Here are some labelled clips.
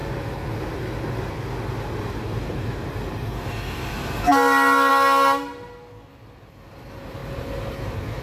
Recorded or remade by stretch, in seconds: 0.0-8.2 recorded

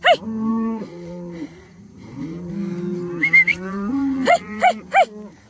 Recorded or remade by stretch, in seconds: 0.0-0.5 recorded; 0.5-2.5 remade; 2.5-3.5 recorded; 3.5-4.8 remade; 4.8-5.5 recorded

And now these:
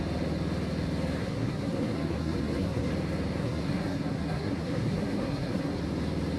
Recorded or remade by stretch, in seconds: 0.0-1.2 recorded; 1.2-2.9 remade; 2.9-3.4 recorded; 3.4-5.8 remade; 5.8-6.4 recorded